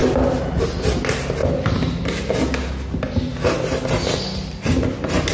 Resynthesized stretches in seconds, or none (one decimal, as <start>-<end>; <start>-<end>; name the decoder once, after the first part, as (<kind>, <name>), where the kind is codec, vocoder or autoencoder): none